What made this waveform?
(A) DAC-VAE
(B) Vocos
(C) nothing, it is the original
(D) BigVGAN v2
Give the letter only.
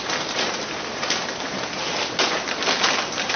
C